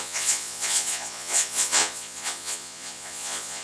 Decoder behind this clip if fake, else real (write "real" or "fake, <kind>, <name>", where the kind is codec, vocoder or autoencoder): fake, vocoder, Vocos